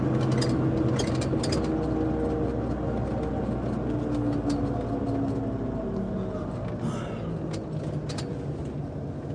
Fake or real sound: real